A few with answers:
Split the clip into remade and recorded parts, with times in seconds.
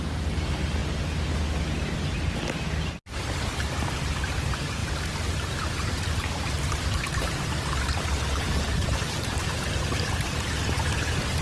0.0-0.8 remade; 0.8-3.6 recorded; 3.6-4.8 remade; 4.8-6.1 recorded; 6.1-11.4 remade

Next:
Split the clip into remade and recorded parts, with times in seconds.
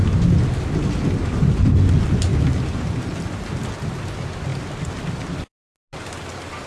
0.0-6.7 recorded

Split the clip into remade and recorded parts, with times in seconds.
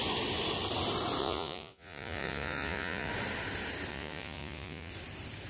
0.0-1.2 recorded; 1.2-3.1 remade; 3.1-3.9 recorded; 3.9-4.9 remade; 4.9-5.5 recorded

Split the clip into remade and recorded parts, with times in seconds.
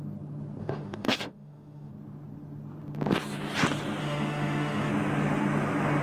0.0-0.6 recorded; 0.6-1.9 remade; 1.9-4.0 recorded; 4.0-4.9 remade; 4.9-6.0 recorded